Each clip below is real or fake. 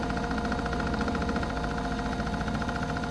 real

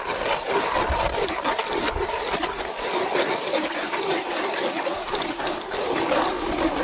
real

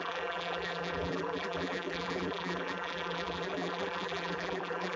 fake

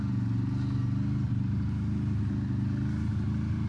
real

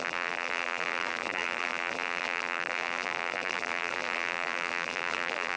fake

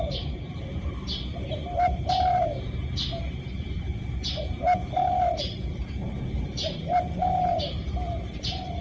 fake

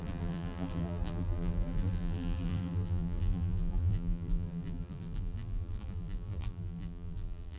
fake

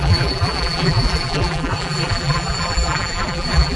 fake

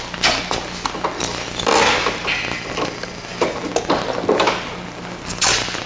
real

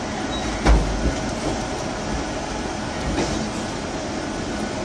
real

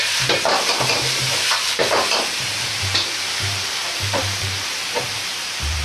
fake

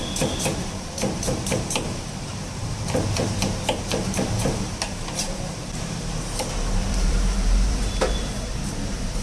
fake